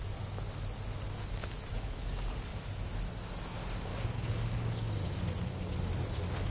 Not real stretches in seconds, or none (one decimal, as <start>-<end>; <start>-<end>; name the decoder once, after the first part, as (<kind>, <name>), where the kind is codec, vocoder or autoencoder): 1.7-2.6 (codec, DAC); 3.9-4.8

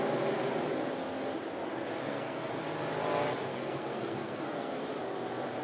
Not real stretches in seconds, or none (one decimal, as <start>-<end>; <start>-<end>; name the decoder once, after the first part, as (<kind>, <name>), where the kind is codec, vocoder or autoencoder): 2.0-2.5 (codec, SNAC); 3.5-4.8

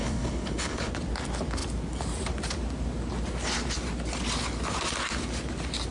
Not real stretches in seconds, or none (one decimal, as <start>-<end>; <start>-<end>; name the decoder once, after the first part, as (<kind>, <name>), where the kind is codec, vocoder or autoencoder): 0.0-0.9 (codec, HILCodec)